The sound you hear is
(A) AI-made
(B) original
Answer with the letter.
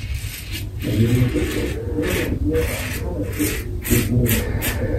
B